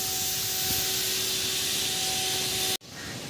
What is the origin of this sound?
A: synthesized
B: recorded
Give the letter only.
B